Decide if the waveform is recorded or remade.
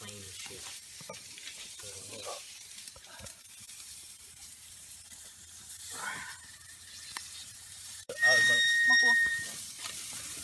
remade